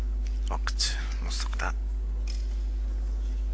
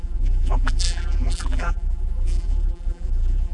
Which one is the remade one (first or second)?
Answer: second